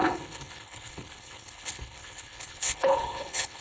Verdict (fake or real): fake